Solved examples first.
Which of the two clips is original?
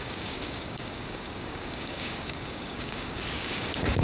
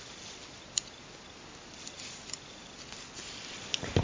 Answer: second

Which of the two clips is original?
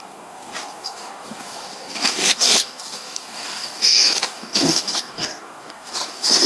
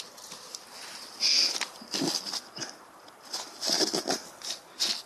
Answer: second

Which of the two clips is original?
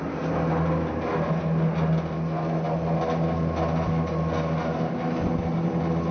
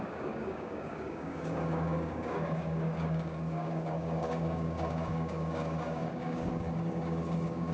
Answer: first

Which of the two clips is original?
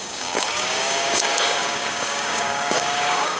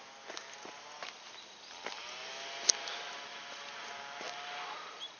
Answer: second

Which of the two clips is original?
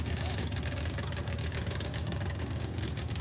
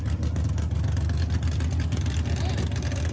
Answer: second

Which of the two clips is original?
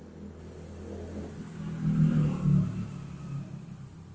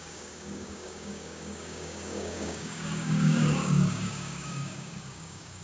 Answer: first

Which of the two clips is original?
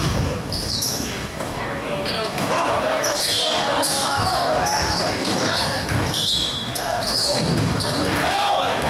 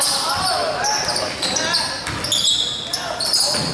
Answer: second